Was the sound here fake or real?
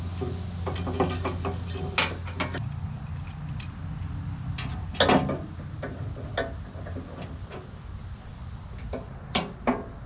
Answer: real